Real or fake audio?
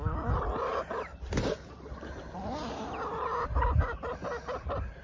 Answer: real